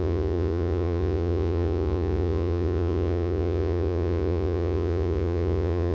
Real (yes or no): no